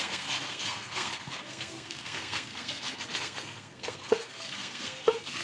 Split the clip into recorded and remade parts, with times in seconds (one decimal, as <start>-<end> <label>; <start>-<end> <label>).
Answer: 0.0-5.4 remade